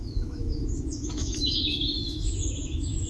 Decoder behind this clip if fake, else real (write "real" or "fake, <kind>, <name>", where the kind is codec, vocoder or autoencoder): fake, autoencoder, DAC-VAE